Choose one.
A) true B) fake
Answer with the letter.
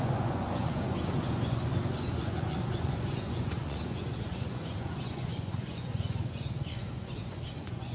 B